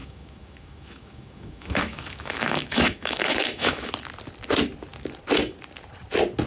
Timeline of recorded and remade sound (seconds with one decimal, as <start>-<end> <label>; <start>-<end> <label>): 0.0-3.9 remade; 3.9-6.5 recorded